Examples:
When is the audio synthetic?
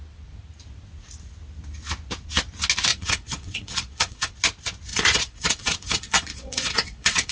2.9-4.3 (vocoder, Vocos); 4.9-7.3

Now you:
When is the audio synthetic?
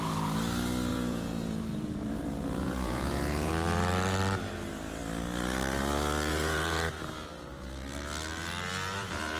0.9-3.5 (vocoder, Vocos); 6.3-6.9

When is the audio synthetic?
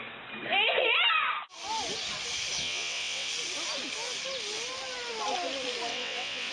2.6-3.3 (vocoder, WaveNeXt); 5.9-6.5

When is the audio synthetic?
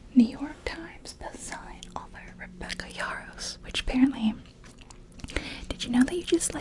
0.5-2.0 (codec, DAC)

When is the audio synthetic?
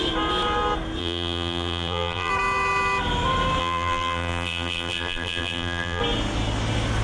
1.0-2.3 (vocoder, BigVGAN v2); 3.6-6.0